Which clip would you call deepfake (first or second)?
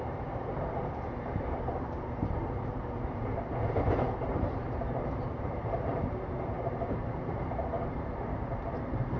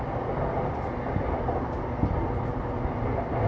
first